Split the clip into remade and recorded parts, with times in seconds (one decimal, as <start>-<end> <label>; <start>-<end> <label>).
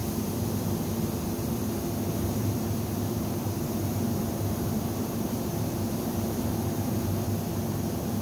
0.0-2.1 recorded; 2.1-8.2 remade